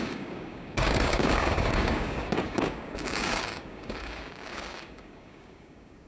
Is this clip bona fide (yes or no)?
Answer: no